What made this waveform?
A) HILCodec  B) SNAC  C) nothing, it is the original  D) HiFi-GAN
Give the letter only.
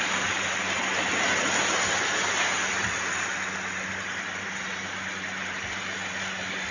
C